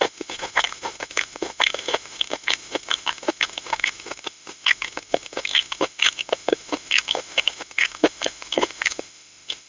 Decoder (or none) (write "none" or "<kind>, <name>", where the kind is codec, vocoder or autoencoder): autoencoder, DAC-VAE